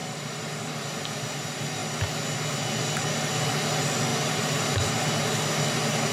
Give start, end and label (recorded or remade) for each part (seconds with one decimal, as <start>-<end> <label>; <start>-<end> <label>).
0.0-0.8 remade; 0.8-4.1 recorded; 4.1-4.9 remade; 4.9-6.1 recorded

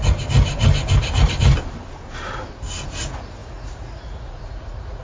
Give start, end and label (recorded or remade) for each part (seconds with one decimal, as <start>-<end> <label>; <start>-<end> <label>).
0.0-3.0 recorded; 3.0-5.0 remade

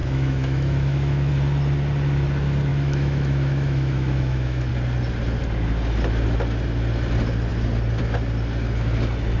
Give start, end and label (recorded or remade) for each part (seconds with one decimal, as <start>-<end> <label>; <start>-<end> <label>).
0.0-1.3 remade; 1.3-2.7 recorded; 2.7-4.7 remade; 4.7-9.4 recorded